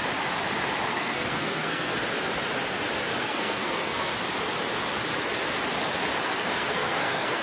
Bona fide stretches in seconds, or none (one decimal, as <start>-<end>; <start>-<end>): 0.0-0.9; 1.9-3.2; 4.1-6.2

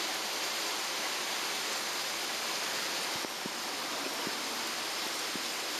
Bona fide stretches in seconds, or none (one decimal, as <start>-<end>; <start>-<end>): 0.0-5.8